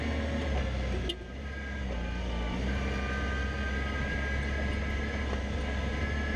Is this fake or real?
real